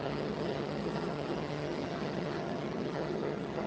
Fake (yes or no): yes